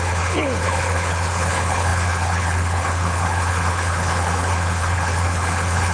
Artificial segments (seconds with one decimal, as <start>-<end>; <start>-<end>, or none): 0.0-5.9